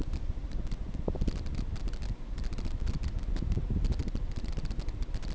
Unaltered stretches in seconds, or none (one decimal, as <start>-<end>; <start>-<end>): 0.0-4.0; 4.6-5.3